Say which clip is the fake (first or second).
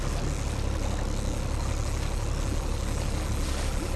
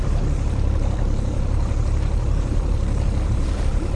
second